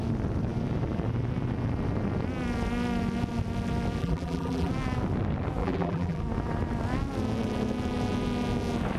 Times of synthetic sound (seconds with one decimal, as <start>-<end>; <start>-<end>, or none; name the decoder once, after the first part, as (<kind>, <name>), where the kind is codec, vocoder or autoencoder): 4.0-4.7 (vocoder, BigVGAN v2); 5.6-6.2